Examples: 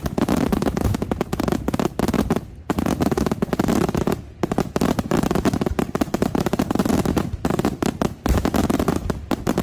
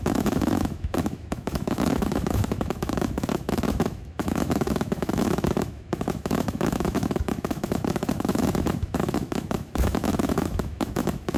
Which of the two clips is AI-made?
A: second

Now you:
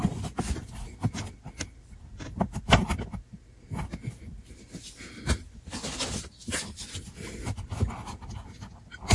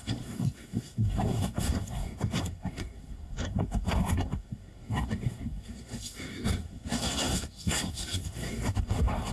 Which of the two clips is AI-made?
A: second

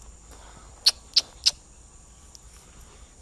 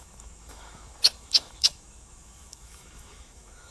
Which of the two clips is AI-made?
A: second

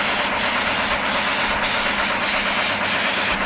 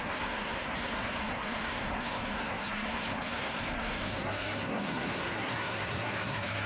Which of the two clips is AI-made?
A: second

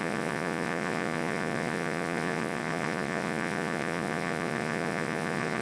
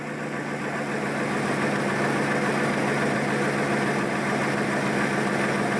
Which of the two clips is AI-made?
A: first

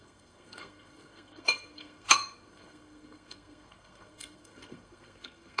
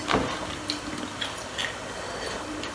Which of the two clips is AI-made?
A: first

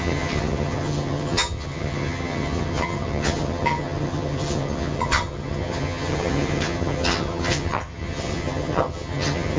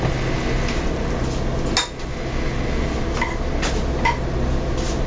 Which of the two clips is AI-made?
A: first